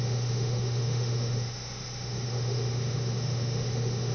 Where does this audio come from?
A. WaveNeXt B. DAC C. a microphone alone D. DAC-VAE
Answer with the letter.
D